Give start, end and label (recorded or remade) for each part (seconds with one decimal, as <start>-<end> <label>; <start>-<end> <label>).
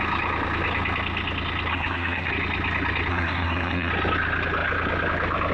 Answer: 0.0-1.7 recorded; 1.7-2.3 remade; 2.3-3.1 recorded; 3.1-3.9 remade; 3.9-5.5 recorded